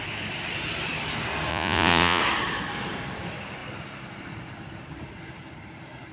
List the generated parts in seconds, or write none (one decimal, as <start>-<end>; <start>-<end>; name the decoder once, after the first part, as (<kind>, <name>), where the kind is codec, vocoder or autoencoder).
1.5-2.2 (vocoder, Vocos)